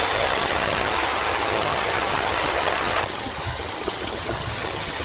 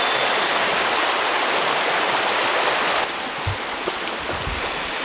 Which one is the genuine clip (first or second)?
second